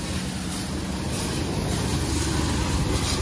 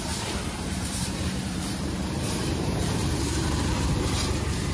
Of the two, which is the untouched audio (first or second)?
first